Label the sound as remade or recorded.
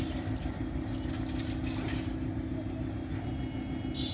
recorded